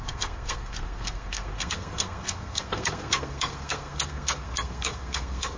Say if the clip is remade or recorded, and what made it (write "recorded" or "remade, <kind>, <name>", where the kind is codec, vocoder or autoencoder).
remade, codec, SNAC